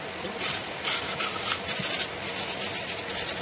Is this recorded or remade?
recorded